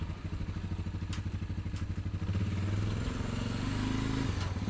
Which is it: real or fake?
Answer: real